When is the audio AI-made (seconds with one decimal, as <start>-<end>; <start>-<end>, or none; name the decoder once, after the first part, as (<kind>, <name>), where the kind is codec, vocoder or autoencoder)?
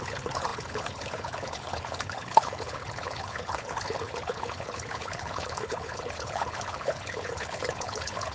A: 0.0-8.3 (codec, HILCodec)